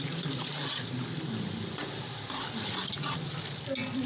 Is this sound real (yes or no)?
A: yes